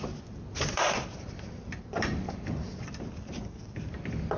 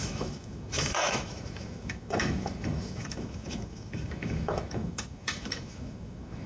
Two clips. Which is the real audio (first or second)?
first